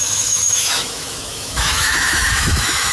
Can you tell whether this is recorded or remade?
remade